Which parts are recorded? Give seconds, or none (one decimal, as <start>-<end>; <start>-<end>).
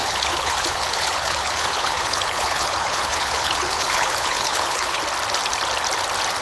5.0-6.4